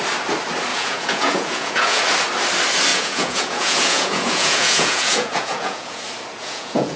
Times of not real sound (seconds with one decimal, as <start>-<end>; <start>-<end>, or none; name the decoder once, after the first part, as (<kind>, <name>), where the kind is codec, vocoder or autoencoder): 0.7-2.0 (vocoder, Vocos); 2.9-6.0; 6.4-7.0

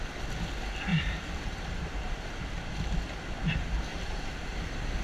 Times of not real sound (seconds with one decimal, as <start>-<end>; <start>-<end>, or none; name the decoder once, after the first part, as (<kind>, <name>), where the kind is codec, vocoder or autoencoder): 0.9-2.5 (vocoder, BigVGAN v2); 3.9-5.0